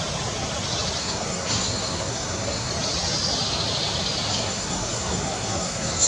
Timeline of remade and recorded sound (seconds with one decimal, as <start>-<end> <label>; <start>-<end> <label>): 0.0-1.0 recorded; 1.0-2.7 remade; 2.7-4.3 recorded; 4.3-6.1 remade